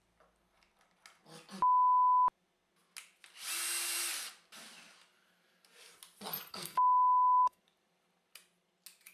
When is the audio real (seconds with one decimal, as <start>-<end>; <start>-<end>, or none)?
0.0-6.5; 7.6-9.1